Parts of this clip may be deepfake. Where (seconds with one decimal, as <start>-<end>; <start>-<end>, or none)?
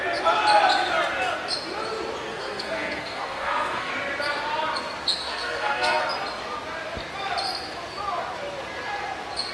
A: 2.3-3.9; 5.2-6.0